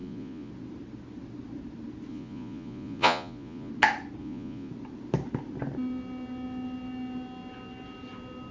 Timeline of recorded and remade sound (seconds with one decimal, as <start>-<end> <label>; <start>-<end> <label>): 0.0-0.5 remade; 0.5-2.1 recorded; 2.1-3.7 remade; 3.7-4.2 recorded; 4.2-4.7 remade; 4.7-8.5 recorded